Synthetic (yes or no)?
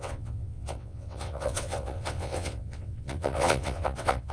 yes